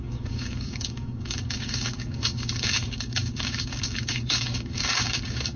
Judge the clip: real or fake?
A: fake